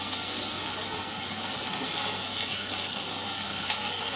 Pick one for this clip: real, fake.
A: fake